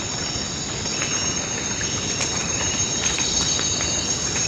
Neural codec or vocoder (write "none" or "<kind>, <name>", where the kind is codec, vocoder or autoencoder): none